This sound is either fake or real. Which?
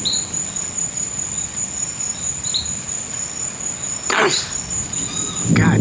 real